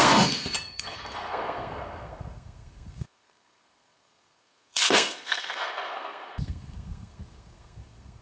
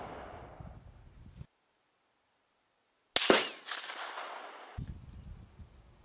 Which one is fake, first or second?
first